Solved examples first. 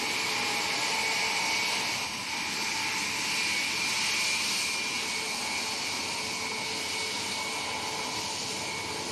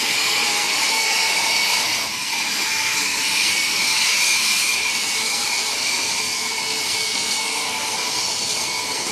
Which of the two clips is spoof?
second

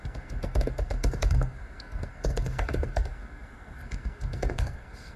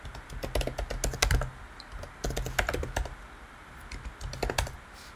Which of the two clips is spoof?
first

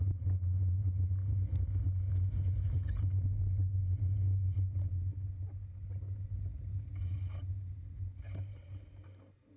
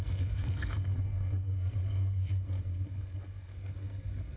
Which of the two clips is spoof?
second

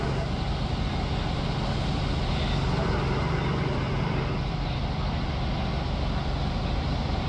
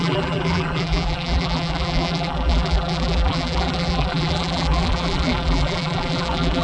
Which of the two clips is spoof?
second